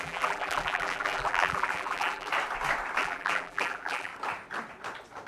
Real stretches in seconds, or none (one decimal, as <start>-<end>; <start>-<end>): 2.3-3.0; 4.1-5.3